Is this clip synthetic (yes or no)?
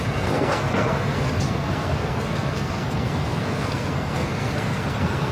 yes